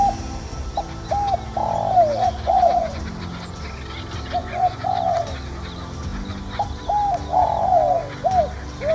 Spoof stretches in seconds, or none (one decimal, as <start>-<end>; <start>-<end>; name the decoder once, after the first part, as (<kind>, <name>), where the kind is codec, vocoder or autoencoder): 2.1-3.0 (vocoder, Vocos); 4.4-4.9